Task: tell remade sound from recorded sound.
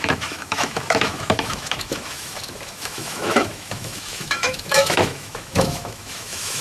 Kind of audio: remade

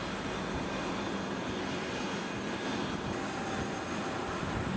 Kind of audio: recorded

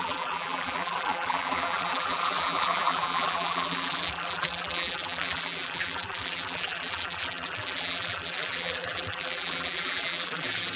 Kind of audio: remade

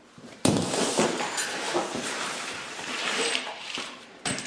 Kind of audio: remade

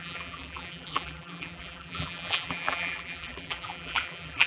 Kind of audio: remade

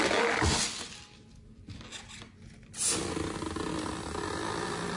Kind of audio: recorded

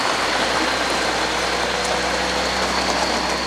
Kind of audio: recorded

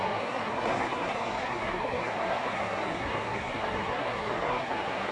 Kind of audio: remade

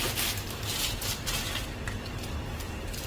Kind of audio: recorded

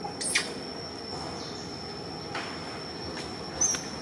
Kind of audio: recorded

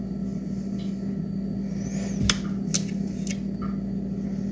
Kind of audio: recorded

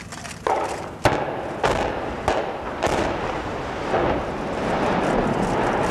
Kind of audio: recorded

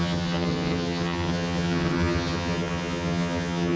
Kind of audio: remade